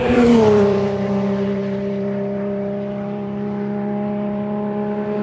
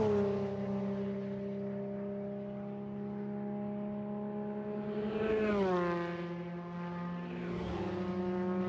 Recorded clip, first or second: second